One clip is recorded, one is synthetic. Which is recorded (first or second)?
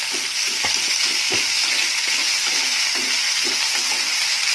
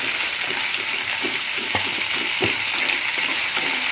first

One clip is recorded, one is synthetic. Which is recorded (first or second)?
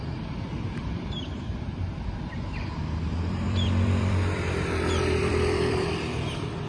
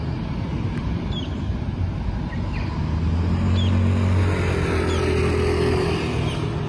second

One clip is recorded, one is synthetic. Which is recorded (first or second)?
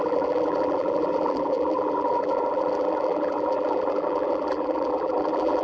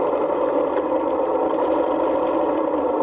second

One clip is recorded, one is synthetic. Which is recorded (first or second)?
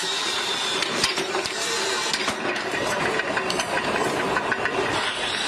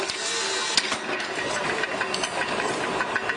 second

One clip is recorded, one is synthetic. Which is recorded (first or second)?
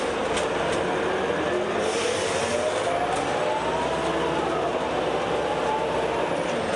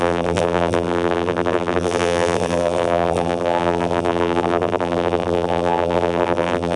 first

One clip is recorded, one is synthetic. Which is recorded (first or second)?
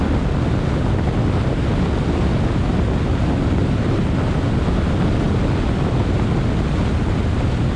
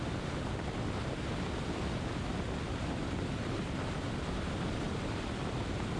first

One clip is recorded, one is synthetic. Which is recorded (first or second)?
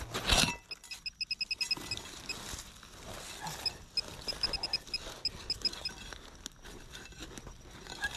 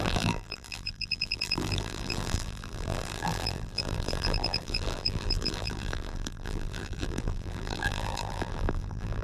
first